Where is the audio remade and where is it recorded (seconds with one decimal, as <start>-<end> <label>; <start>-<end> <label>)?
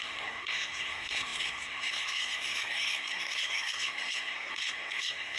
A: 0.0-5.4 remade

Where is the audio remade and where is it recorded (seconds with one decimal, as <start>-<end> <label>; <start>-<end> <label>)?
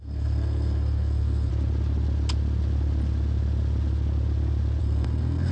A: 0.0-1.5 remade; 1.5-4.8 recorded; 4.8-5.5 remade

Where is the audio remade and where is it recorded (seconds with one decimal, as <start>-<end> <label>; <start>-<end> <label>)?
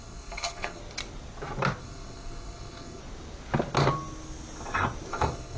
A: 0.0-0.8 remade; 0.8-1.8 recorded; 1.8-3.0 remade; 3.0-5.1 recorded; 5.1-5.6 remade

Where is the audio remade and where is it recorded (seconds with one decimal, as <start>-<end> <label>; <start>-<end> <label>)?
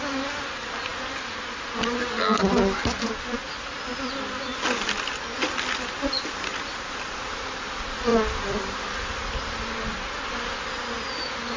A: 0.0-11.6 recorded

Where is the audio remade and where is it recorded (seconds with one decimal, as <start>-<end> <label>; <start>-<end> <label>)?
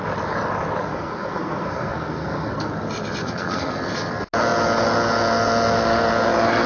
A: 0.0-0.9 recorded; 0.9-2.7 remade; 2.7-3.2 recorded; 3.2-3.7 remade; 3.7-6.7 recorded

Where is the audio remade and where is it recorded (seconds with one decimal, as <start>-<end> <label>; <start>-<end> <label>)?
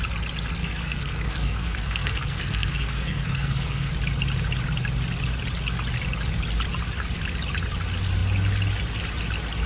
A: 0.0-0.6 recorded; 0.6-3.9 remade; 3.9-9.7 recorded